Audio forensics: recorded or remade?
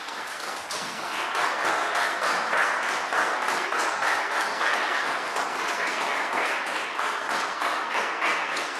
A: remade